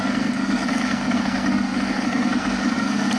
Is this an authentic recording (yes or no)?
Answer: no